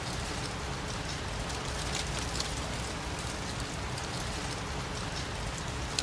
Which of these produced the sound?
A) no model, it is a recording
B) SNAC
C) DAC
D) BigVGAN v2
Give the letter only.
A